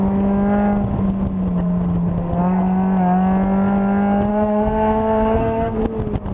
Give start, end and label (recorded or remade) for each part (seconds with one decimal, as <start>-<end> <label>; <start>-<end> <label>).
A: 0.0-4.3 recorded; 4.3-5.8 remade; 5.8-6.3 recorded